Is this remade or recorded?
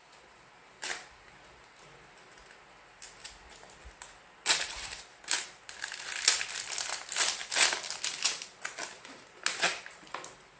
recorded